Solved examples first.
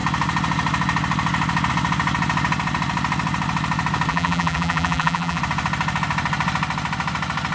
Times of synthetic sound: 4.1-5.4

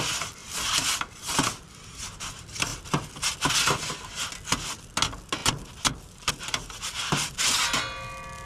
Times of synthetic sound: 0.4-1.1; 5.4-6.3

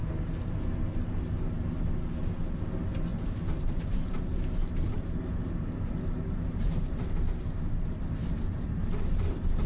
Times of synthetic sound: 3.1-6.9; 8.2-9.2

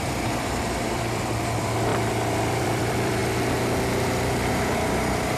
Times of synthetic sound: 0.0-1.9; 2.4-3.2; 4.5-5.4

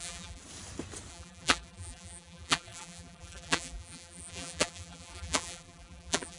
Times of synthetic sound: 0.0-0.4; 1.1-6.4

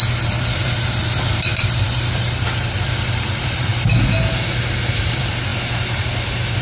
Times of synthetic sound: 0.0-3.7; 4.9-5.5

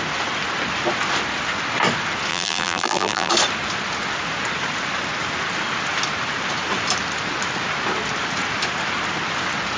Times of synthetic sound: 2.3-3.3

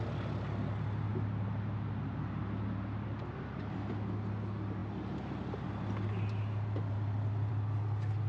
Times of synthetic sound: none